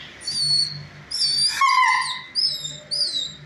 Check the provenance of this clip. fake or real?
real